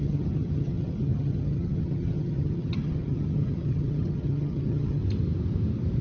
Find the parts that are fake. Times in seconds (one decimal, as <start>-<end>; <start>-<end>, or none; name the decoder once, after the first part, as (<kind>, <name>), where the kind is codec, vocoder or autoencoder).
0.0-5.0 (vocoder, HiFi-GAN)